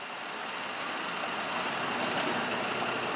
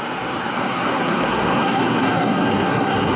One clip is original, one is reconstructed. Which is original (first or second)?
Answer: first